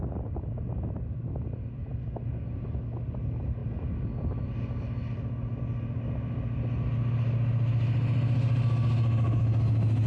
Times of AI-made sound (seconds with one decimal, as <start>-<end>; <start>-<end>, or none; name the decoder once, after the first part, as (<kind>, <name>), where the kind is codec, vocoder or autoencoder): none